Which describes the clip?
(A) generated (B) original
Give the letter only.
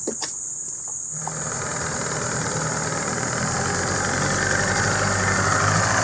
B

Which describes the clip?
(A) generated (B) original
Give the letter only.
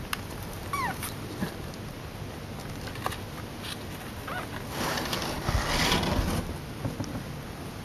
B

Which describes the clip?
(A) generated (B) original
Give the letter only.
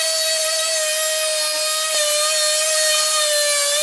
B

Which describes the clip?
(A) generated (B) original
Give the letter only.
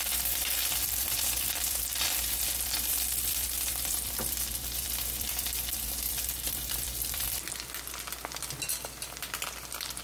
A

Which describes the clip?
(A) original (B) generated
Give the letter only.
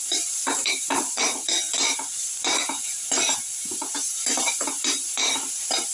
B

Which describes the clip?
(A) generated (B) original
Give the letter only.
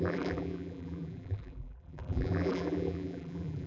A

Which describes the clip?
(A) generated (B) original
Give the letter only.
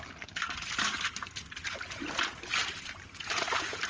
B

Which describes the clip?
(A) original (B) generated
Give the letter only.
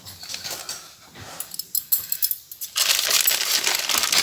A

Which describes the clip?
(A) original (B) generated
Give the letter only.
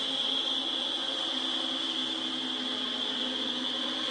A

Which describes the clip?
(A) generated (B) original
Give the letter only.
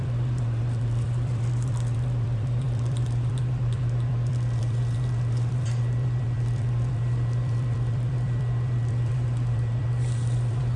A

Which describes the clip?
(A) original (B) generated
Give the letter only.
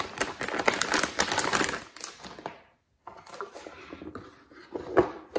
A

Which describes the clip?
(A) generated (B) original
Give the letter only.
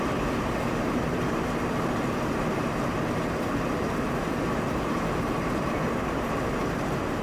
A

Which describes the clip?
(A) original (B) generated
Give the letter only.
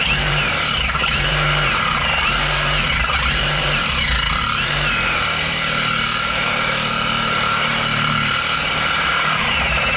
B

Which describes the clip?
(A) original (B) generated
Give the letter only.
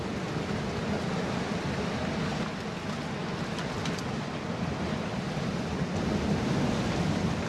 A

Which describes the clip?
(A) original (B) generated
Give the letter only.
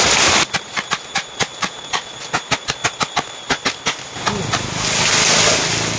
A